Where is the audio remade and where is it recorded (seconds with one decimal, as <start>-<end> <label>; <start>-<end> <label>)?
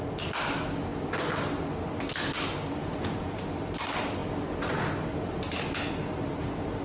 0.0-2.8 recorded; 2.8-3.4 remade; 3.4-6.8 recorded